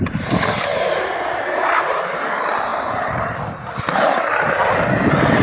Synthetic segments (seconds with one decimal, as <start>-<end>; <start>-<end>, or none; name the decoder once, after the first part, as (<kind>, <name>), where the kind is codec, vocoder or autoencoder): 0.7-2.2 (vocoder, BigVGAN v2)